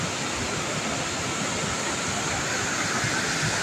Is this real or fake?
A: real